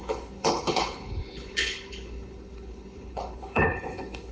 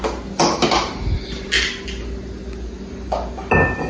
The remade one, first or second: first